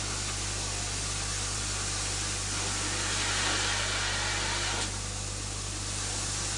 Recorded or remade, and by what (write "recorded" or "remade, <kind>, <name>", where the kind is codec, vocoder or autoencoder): recorded